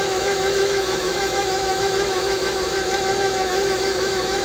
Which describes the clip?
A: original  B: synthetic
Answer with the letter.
B